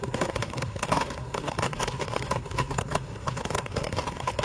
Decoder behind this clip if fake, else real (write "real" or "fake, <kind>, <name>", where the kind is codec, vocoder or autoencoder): fake, codec, SNAC